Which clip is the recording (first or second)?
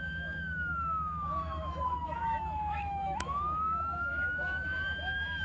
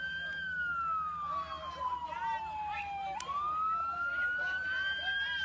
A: second